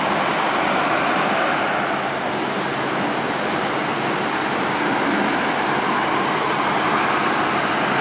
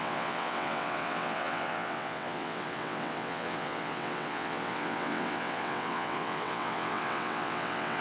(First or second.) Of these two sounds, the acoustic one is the first